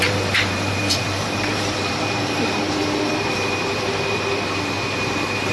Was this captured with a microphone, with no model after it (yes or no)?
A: no